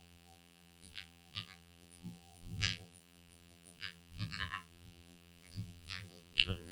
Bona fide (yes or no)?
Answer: no